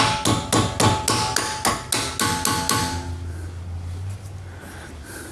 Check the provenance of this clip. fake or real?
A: real